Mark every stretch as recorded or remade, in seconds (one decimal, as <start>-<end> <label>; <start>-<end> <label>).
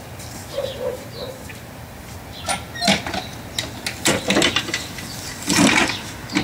0.0-0.9 recorded; 0.9-1.8 remade; 1.8-6.4 recorded